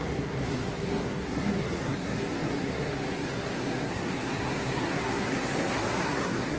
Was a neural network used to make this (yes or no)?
yes